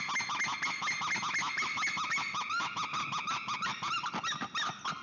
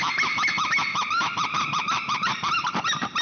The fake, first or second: second